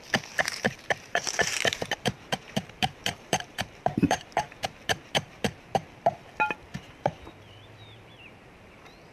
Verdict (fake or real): fake